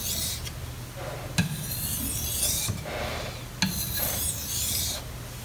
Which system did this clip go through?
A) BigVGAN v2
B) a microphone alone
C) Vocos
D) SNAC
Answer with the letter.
B